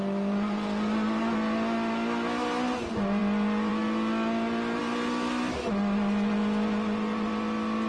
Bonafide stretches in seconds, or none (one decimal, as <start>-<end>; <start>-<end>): 0.0-7.9